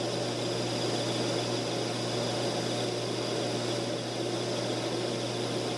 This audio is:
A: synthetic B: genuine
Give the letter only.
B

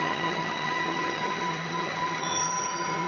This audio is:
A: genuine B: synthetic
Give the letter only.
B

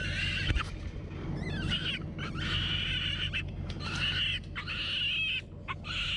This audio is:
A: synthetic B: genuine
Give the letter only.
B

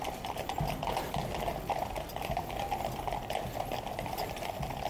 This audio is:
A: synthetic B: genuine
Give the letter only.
B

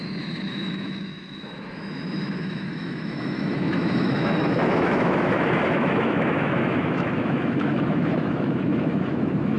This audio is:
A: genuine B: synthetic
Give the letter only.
B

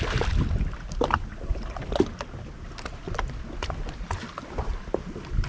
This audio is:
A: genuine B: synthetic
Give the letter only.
A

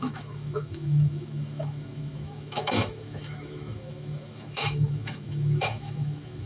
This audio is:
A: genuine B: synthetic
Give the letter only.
B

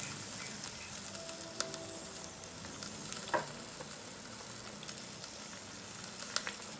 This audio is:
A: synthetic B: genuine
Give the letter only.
B